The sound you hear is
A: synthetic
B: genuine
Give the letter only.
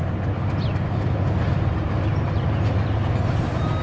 B